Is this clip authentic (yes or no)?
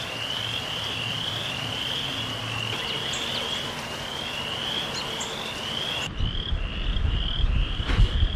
yes